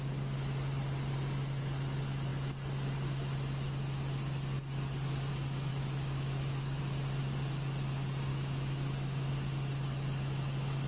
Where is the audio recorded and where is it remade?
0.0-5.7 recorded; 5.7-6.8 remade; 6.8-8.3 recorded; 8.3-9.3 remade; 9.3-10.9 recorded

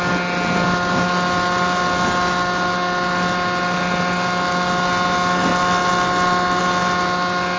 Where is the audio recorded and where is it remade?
0.0-7.6 recorded